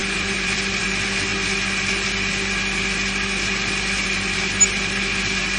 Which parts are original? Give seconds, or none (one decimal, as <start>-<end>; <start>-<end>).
0.8-5.6